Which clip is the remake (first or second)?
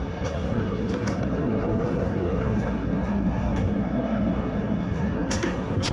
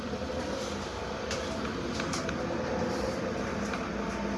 first